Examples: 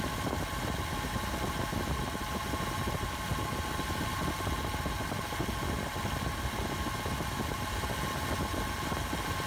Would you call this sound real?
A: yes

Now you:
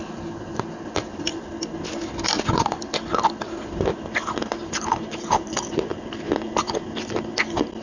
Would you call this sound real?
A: yes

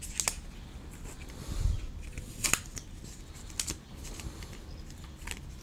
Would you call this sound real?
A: yes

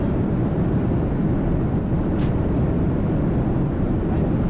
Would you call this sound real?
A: yes